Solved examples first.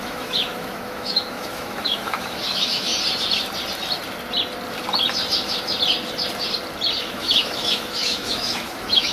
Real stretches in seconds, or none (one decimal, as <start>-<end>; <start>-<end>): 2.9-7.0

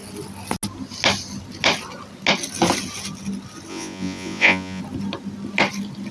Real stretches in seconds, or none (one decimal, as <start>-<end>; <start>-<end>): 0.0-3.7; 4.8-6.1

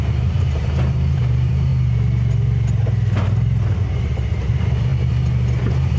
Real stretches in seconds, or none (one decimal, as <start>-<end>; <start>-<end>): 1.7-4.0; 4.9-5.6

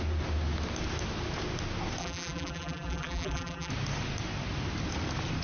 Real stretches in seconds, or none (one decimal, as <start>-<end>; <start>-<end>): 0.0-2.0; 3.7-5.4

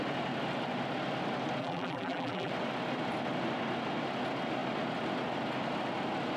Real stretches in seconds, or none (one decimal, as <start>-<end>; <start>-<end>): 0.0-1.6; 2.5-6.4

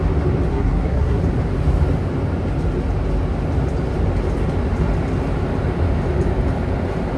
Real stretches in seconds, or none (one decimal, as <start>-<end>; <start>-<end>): 0.0-0.5; 1.2-7.2